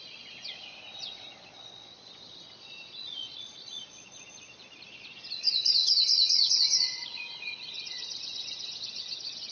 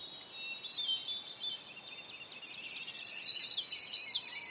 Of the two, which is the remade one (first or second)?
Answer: first